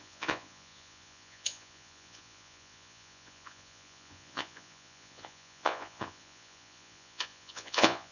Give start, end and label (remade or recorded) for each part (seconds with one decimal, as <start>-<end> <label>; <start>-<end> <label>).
0.0-8.1 remade